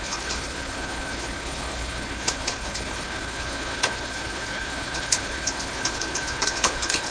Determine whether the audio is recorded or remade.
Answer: remade